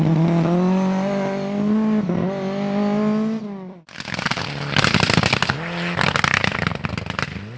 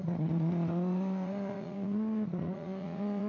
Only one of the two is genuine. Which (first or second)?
first